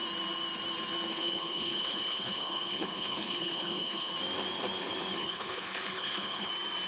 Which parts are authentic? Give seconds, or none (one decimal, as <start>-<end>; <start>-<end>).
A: 0.0-1.1; 4.1-5.2; 6.5-6.9